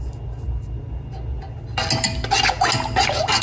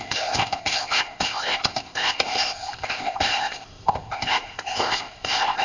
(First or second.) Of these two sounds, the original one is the first